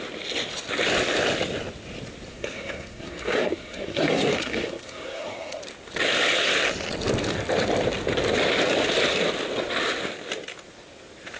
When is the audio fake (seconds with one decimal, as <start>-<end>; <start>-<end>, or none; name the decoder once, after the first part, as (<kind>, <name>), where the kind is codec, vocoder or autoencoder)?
2.3-5.6 (codec, SNAC)